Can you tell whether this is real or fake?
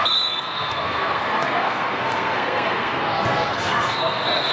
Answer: fake